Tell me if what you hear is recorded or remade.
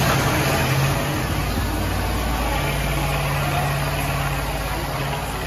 recorded